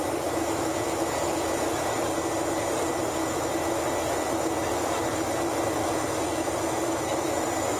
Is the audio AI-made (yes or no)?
no